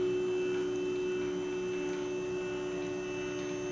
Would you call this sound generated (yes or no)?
no